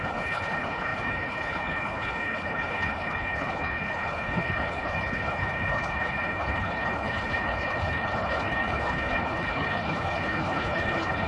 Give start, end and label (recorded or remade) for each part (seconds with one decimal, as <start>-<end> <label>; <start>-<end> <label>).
0.0-11.3 remade

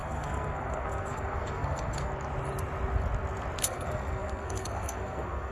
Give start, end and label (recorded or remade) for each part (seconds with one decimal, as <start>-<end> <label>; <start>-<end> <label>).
0.0-2.1 remade; 2.1-3.6 recorded; 3.6-5.5 remade

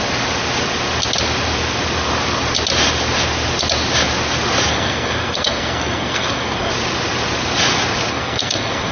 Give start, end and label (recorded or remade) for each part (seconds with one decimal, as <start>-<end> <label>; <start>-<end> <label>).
0.0-4.7 recorded; 4.7-6.7 remade; 6.7-8.1 recorded; 8.1-8.9 remade

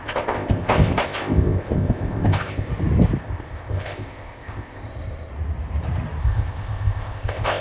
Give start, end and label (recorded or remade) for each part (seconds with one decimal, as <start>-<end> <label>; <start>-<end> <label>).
0.0-2.7 remade; 2.7-3.2 recorded; 3.2-5.3 remade; 5.3-6.2 recorded; 6.2-7.6 remade